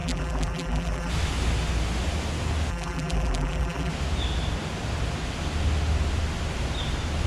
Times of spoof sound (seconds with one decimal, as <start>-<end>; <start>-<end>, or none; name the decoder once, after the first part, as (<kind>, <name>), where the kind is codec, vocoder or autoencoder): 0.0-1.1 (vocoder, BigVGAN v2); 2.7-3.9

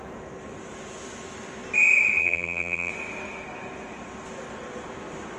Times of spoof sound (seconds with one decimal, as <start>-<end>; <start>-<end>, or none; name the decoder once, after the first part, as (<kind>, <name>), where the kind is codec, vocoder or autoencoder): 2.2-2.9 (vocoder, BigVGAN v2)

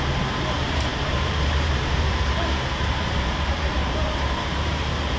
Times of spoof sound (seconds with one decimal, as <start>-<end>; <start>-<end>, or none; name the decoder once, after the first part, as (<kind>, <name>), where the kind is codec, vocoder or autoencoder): 0.0-5.2 (vocoder, BigVGAN v2)